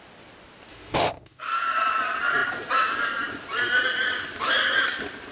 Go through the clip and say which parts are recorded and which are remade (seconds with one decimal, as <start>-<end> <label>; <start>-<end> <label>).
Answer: 0.0-0.7 recorded; 0.7-1.4 remade; 1.4-5.3 recorded